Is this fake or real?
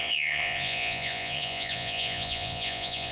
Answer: fake